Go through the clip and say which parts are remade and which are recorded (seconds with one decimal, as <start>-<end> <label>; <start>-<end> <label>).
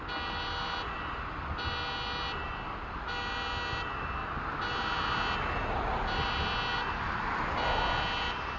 0.0-8.6 recorded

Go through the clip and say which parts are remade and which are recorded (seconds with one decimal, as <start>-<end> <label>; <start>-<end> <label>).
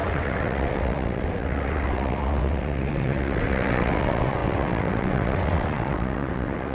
0.0-6.7 remade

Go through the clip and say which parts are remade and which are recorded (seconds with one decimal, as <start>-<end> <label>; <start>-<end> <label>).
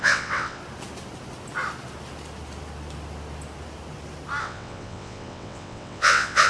0.0-0.6 remade; 0.6-4.4 recorded; 4.4-6.5 remade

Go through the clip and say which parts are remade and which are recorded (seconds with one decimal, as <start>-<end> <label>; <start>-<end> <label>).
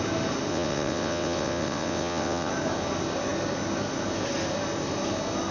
0.0-0.5 recorded; 0.5-2.5 remade; 2.5-5.5 recorded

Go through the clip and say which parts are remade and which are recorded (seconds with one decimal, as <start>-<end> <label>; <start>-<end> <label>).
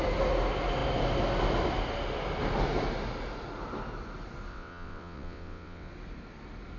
0.0-4.5 recorded; 4.5-5.9 remade; 5.9-6.8 recorded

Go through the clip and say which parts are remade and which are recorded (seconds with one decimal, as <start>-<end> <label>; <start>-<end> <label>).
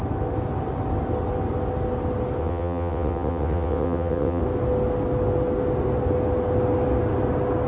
0.0-2.4 recorded; 2.4-4.4 remade; 4.4-7.7 recorded